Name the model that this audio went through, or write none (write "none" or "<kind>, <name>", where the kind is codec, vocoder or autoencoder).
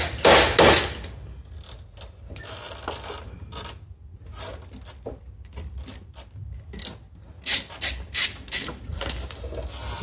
none